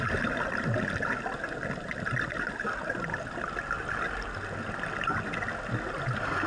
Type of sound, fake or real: real